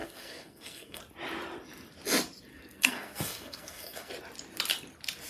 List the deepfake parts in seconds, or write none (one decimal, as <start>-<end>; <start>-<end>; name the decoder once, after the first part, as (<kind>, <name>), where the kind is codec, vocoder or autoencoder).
0.0-1.0 (codec, SNAC); 2.5-4.1